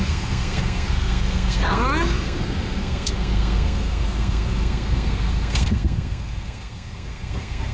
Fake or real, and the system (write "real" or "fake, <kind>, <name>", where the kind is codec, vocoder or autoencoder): fake, codec, SNAC